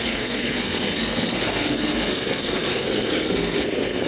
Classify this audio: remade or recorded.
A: remade